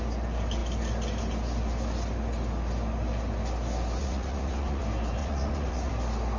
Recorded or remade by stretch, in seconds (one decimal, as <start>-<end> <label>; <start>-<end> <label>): 0.0-4.0 recorded; 4.0-4.8 remade; 4.8-5.2 recorded; 5.2-5.9 remade; 5.9-6.4 recorded